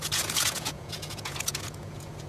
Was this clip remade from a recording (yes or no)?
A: yes